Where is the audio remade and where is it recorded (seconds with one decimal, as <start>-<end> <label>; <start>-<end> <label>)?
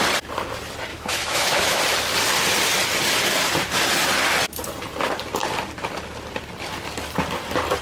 0.0-0.9 recorded; 0.9-1.8 remade; 1.8-7.8 recorded